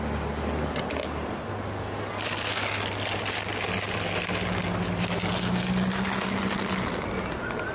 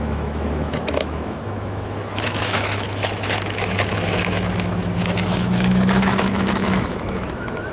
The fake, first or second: second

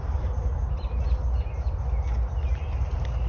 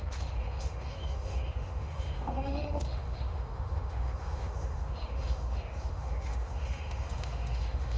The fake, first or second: second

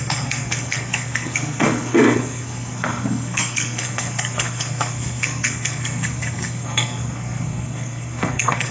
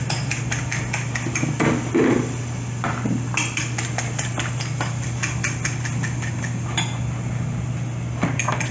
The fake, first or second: first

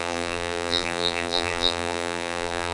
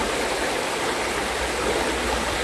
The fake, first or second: first